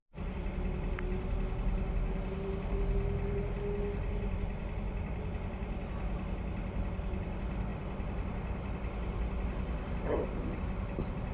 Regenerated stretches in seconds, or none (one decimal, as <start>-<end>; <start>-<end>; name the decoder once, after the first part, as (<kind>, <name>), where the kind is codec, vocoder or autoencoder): none